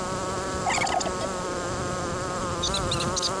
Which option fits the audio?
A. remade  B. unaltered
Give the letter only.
B